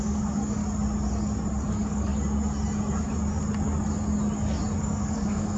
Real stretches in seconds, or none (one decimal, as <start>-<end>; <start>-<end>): 0.6-1.7; 2.1-4.8